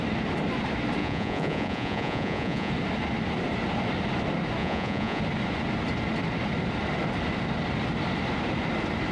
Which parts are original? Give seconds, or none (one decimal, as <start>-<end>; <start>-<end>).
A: 0.0-1.0; 2.7-4.6; 5.2-9.1